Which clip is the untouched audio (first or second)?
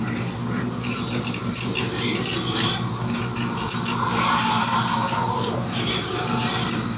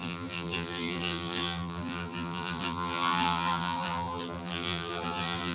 first